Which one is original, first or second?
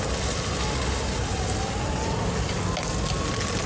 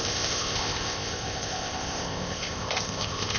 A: first